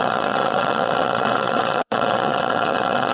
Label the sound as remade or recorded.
remade